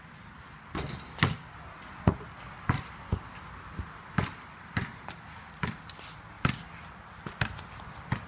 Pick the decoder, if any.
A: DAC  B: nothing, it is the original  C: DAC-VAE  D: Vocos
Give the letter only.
B